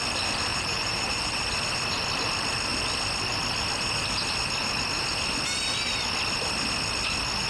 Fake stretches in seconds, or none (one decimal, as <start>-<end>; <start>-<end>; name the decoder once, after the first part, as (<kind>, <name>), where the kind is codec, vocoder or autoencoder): 0.5-1.4 (vocoder, BigVGAN v2)